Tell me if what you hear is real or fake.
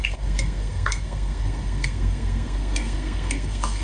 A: fake